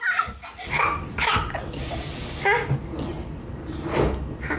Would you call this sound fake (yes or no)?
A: no